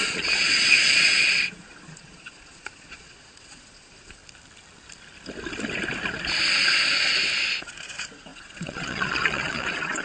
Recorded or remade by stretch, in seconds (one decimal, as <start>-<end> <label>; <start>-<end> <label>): 0.0-4.2 remade; 4.2-7.6 recorded; 7.6-10.0 remade